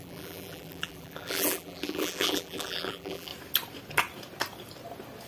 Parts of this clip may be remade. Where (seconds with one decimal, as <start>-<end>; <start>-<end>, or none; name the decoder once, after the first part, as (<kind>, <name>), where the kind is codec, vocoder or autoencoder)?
0.0-3.3 (vocoder, BigVGAN v2)